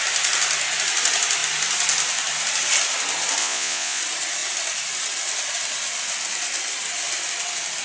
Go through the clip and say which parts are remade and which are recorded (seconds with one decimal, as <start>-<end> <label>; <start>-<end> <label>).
0.0-3.4 recorded; 3.4-4.0 remade; 4.0-7.8 recorded